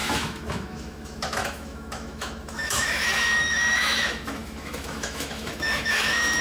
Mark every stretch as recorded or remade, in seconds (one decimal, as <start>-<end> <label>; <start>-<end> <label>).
0.0-6.4 remade